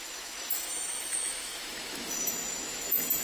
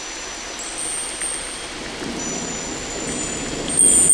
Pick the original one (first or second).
second